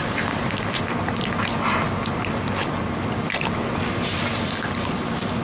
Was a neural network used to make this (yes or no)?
no